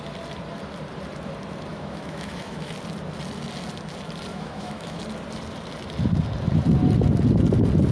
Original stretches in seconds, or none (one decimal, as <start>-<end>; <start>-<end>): 0.0-1.7; 2.7-4.3; 5.0-7.9